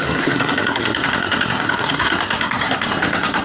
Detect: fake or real fake